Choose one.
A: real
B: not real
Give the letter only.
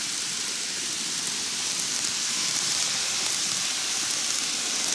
A